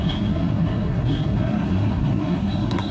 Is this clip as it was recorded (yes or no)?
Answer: no